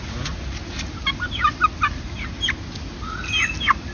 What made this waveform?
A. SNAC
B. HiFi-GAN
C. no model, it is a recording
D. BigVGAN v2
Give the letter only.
C